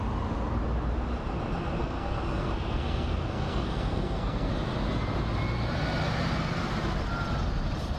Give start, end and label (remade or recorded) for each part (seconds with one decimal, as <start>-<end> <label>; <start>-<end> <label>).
0.0-1.8 recorded; 1.8-4.5 remade; 4.5-8.0 recorded